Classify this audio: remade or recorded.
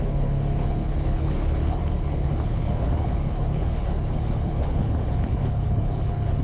remade